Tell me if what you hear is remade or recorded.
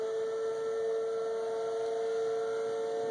recorded